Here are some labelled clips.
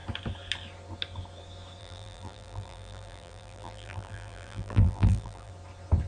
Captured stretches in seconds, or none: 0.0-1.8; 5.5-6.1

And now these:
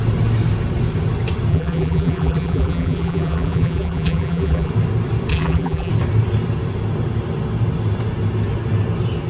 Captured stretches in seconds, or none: 0.0-1.5; 4.7-5.3; 5.9-9.3

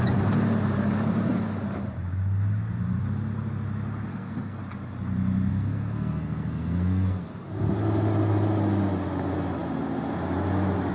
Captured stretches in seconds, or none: 0.0-4.1; 4.6-5.5; 7.3-10.9

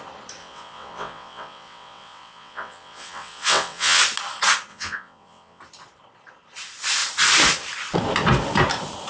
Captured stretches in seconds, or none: 0.0-0.4; 4.0-4.7; 5.6-9.1